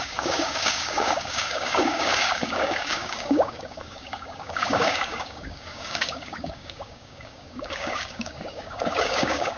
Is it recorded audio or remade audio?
remade